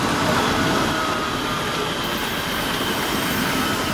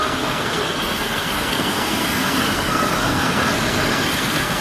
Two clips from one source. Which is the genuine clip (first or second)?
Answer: first